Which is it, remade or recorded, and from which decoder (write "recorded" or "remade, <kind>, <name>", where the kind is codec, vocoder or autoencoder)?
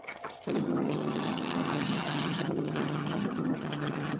remade, vocoder, HiFi-GAN